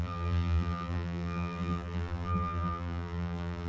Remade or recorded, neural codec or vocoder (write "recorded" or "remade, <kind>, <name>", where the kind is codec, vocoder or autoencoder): remade, vocoder, BigVGAN v2